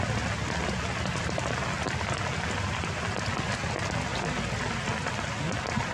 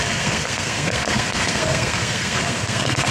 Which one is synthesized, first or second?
second